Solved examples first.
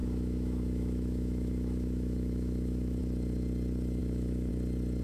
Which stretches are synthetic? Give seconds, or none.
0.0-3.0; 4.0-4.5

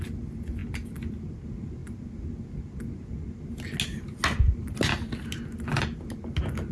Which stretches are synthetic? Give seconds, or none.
none

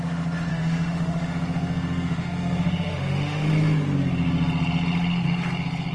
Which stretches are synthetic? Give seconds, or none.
0.5-3.5

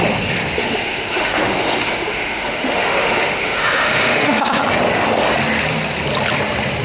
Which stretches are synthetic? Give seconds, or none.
0.6-4.6

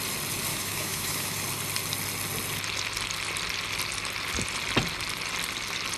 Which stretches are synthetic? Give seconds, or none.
0.5-1.4